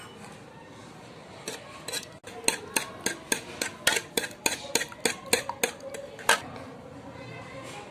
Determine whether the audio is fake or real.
real